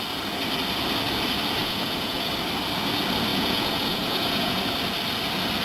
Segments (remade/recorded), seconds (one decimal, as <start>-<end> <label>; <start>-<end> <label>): 0.0-1.6 recorded; 1.6-2.3 remade; 2.3-3.3 recorded; 3.3-4.6 remade; 4.6-5.6 recorded